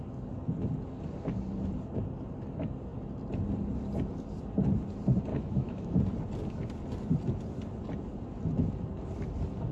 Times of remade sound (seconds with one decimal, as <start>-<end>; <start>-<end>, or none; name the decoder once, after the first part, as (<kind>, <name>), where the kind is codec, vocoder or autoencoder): 5.3-6.0 (autoencoder, DAC-VAE)